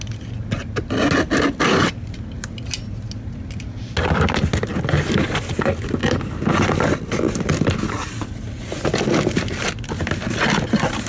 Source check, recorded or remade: recorded